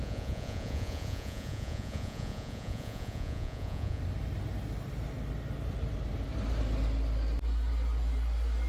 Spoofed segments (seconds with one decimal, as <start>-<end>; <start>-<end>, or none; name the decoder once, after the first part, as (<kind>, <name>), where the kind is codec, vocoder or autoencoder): 0.0-4.0 (vocoder, Vocos)

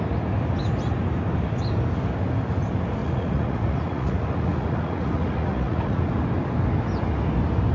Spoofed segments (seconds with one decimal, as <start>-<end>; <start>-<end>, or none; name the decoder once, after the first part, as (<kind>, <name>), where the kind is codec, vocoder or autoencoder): 3.0-6.1 (vocoder, Vocos)

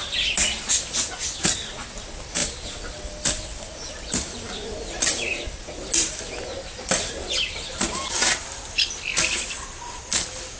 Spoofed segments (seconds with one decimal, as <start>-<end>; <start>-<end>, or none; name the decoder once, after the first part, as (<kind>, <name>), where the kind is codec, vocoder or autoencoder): none

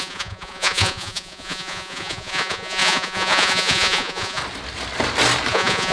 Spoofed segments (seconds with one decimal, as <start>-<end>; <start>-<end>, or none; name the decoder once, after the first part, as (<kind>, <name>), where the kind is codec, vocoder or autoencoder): 0.0-4.4 (vocoder, Vocos); 5.5-5.9